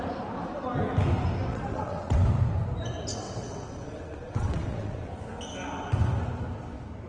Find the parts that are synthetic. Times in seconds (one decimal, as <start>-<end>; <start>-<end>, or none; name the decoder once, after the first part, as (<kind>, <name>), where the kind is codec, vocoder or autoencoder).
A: 1.5-2.2 (vocoder, WaveNeXt); 3.1-5.1